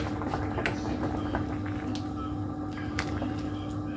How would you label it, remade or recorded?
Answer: recorded